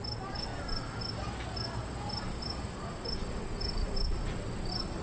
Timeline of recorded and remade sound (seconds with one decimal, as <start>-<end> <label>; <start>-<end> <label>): 0.0-5.0 recorded